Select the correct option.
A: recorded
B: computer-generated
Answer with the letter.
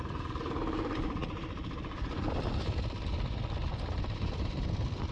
B